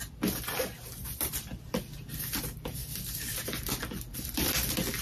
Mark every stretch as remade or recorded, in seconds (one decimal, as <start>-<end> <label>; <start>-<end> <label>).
0.0-5.0 remade